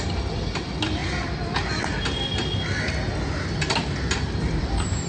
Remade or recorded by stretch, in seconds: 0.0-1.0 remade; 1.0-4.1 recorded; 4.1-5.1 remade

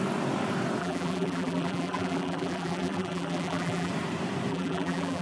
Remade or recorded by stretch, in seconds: 0.0-0.8 recorded; 0.8-3.9 remade; 3.9-4.5 recorded; 4.5-5.2 remade

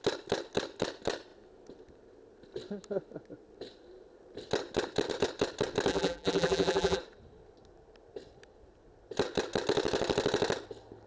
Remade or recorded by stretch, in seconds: 0.0-5.9 recorded; 5.9-7.0 remade; 7.0-11.1 recorded

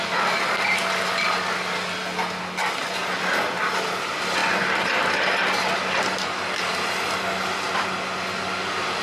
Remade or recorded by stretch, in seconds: 0.0-4.4 remade; 4.4-6.6 recorded; 6.6-9.0 remade

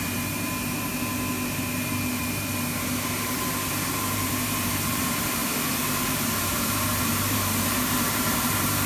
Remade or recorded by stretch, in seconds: 0.0-1.1 remade; 1.1-1.7 recorded; 1.7-5.4 remade; 5.4-6.1 recorded; 6.1-8.9 remade

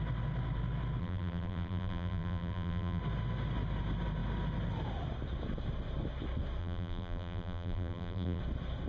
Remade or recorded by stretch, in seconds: 0.0-1.0 recorded; 1.0-3.0 remade; 3.0-6.6 recorded; 6.6-8.4 remade; 8.4-8.9 recorded

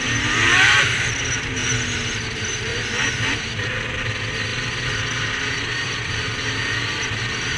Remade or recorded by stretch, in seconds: 0.0-1.6 remade; 1.6-2.2 recorded; 2.2-2.7 remade; 2.7-3.3 recorded; 3.3-4.5 remade; 4.5-5.5 recorded; 5.5-7.6 remade